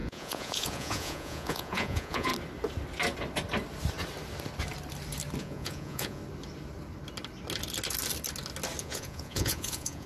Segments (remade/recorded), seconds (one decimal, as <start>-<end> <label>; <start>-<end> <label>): 0.0-2.3 remade; 2.3-5.4 recorded; 5.4-6.2 remade; 6.2-8.8 recorded; 8.8-10.1 remade